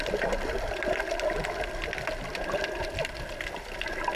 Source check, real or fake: real